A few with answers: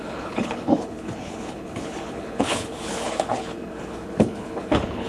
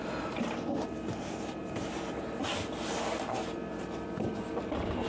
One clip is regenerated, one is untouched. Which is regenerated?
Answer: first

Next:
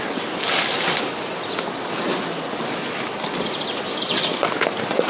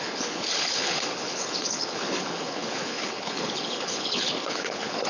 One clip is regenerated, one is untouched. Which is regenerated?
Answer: second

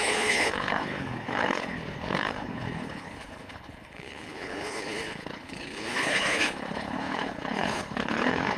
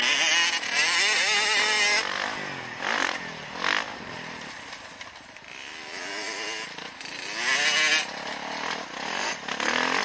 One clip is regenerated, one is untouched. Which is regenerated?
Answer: first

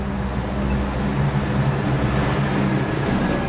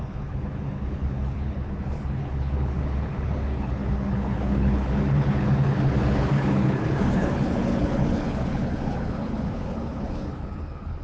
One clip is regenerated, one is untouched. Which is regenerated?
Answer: second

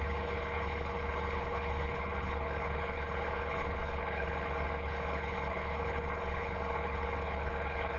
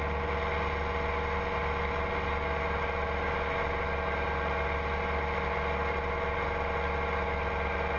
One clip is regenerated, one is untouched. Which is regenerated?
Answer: first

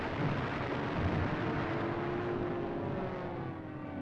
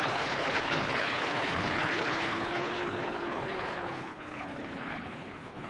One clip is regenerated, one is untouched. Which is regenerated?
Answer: second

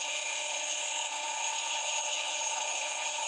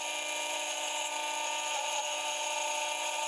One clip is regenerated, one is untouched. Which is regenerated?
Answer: first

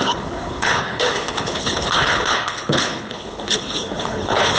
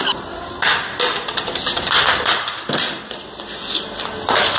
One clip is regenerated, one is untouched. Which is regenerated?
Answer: first